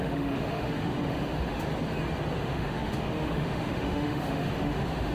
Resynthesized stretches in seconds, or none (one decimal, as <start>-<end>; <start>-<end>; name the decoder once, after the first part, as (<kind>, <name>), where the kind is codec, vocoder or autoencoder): 0.0-1.7 (autoencoder, DAC-VAE); 2.4-5.1